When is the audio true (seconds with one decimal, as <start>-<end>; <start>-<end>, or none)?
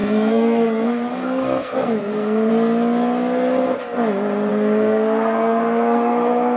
2.5-4.5